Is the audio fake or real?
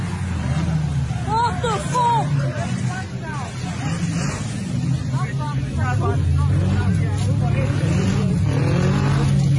real